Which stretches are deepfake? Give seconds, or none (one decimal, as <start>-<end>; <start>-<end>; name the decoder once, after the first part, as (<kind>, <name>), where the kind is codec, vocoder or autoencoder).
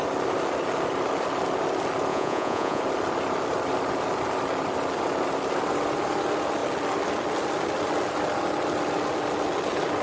2.1-2.8 (vocoder, Vocos)